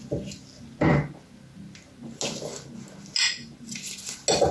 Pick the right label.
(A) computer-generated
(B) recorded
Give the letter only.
B